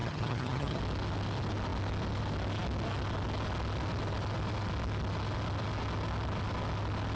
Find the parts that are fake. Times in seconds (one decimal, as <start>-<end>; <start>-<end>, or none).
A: 0.0-0.8